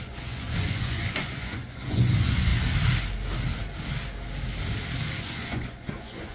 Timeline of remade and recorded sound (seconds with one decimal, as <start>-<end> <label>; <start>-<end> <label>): 0.0-2.5 remade; 2.5-5.2 recorded; 5.2-6.3 remade